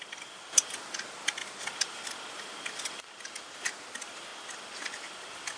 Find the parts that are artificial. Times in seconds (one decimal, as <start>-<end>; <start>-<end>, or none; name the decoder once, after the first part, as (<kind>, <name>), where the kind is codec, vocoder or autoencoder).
none